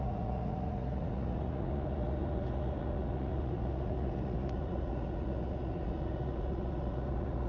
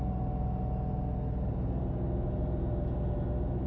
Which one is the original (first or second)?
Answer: second